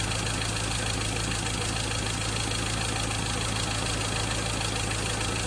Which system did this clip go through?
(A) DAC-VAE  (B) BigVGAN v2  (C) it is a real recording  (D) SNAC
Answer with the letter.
C